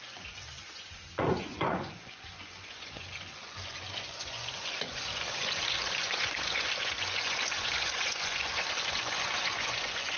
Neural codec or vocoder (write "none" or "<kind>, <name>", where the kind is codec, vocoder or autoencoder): vocoder, Vocos